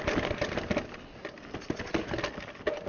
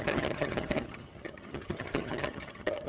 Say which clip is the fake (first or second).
second